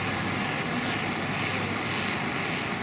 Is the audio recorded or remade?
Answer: recorded